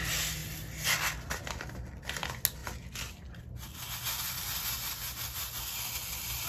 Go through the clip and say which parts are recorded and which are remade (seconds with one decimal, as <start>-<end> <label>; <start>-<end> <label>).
0.0-6.5 recorded